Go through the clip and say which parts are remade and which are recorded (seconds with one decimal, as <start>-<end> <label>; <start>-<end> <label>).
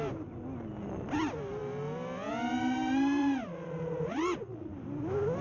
0.0-3.2 recorded; 3.2-4.7 remade; 4.7-5.4 recorded